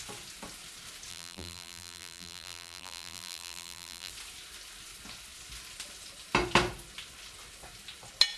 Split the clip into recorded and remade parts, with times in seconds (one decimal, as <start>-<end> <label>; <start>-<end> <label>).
0.0-1.1 recorded; 1.1-4.1 remade; 4.1-8.4 recorded

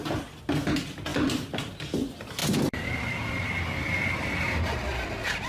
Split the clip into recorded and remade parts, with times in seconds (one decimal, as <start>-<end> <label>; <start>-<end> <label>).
0.0-1.1 recorded; 1.1-1.6 remade; 1.6-2.4 recorded; 2.4-4.7 remade; 4.7-5.5 recorded

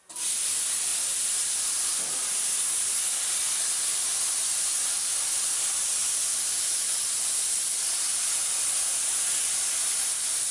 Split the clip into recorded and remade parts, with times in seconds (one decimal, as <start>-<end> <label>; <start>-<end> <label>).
0.0-10.5 recorded

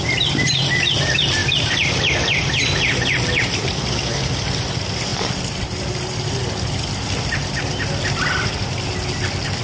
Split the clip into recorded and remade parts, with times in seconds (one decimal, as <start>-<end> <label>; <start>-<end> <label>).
0.0-5.1 recorded; 5.1-6.3 remade; 6.3-9.6 recorded